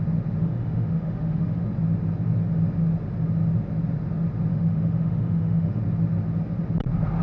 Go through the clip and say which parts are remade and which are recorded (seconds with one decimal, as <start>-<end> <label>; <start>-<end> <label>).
0.0-0.4 recorded; 0.4-1.6 remade; 1.6-4.5 recorded; 4.5-5.8 remade; 5.8-7.2 recorded

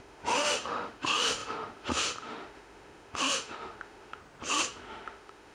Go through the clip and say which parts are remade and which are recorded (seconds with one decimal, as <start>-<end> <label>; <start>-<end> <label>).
0.0-4.2 remade; 4.2-4.7 recorded; 4.7-5.5 remade